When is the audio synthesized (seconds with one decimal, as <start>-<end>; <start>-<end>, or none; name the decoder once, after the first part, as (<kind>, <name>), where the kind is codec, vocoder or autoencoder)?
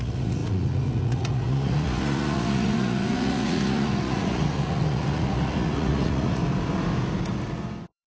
0.0-6.4 (vocoder, Vocos)